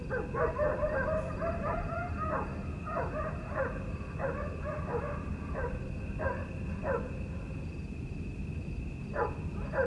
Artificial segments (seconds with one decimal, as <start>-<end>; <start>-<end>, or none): none